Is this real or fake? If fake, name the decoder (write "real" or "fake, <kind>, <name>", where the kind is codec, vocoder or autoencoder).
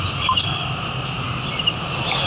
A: real